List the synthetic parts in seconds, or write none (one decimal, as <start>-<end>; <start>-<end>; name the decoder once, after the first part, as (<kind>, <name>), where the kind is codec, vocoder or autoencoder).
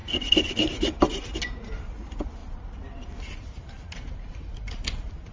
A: 2.4-4.3 (vocoder, BigVGAN v2)